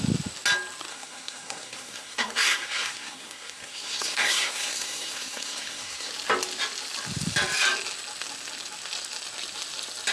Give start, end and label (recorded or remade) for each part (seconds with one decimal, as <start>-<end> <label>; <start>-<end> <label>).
0.0-0.9 recorded; 0.9-6.1 remade; 6.1-10.1 recorded